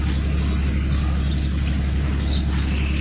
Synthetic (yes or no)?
no